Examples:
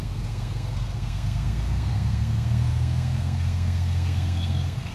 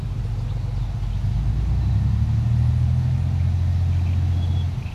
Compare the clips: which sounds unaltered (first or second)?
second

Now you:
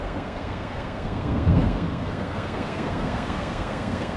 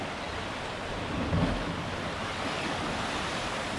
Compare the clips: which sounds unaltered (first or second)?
second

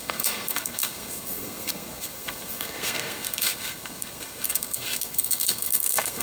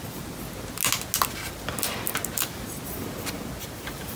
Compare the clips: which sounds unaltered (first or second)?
second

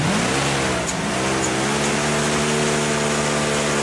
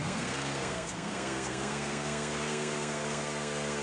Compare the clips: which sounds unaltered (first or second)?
first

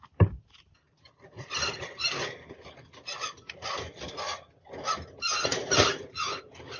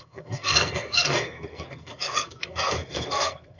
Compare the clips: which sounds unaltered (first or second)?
first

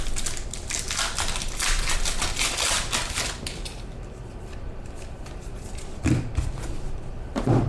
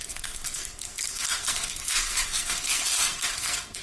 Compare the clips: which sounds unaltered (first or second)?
first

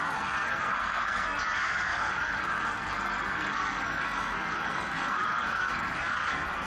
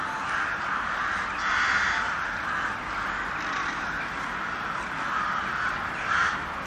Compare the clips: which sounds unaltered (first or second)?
second